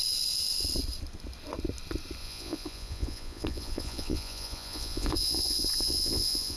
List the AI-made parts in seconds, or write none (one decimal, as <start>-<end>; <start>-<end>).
2.2-6.6